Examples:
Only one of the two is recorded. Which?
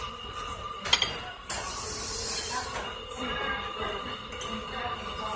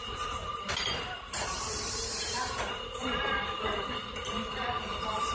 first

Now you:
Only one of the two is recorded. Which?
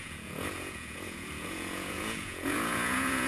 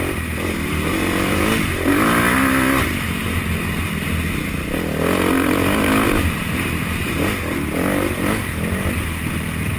second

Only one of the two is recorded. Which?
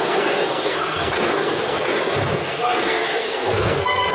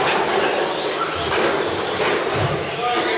second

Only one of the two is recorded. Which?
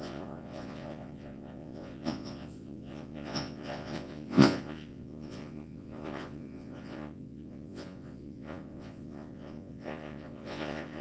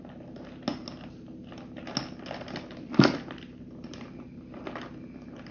second